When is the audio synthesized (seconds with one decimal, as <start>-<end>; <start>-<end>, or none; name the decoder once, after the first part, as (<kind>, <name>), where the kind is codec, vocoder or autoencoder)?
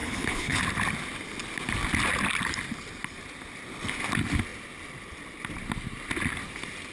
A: 0.0-0.6 (codec, HILCodec)